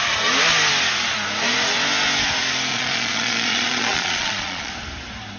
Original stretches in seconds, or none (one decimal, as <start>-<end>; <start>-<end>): 0.0-2.7; 4.7-5.4